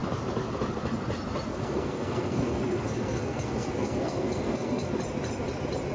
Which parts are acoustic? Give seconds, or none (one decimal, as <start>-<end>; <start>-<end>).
0.0-1.5; 4.9-5.9